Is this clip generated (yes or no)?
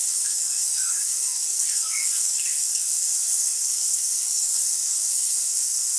yes